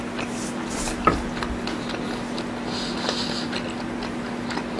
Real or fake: real